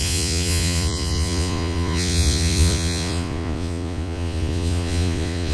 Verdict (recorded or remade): remade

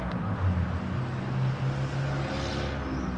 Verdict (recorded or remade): recorded